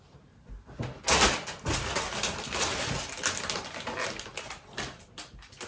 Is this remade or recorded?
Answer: recorded